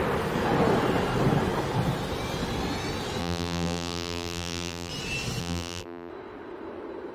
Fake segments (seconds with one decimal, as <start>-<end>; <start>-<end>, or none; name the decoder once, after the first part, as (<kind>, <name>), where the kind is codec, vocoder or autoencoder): 3.2-4.9 (vocoder, BigVGAN v2); 5.4-6.1